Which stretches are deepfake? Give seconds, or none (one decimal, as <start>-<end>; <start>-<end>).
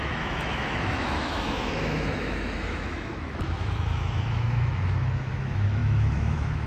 0.0-6.7